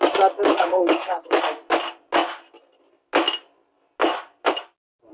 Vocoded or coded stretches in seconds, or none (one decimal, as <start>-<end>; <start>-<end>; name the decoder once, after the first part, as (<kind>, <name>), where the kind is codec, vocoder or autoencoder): 0.5-1.4 (codec, HILCodec)